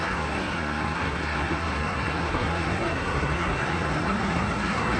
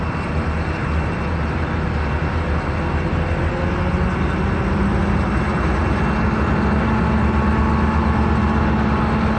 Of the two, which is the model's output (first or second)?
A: first